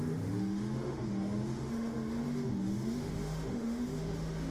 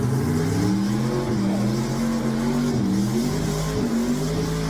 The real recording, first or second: second